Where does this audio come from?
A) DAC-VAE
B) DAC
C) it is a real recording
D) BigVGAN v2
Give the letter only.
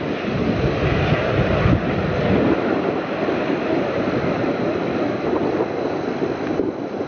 C